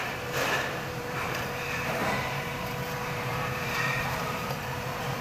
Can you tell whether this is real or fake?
fake